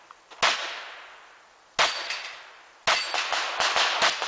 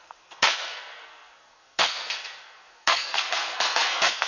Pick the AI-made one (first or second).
second